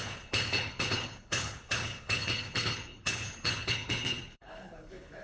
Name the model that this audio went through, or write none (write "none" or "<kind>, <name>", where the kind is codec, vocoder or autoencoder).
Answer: codec, HILCodec